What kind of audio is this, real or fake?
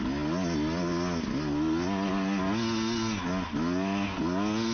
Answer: real